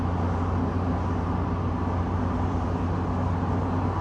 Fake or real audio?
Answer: real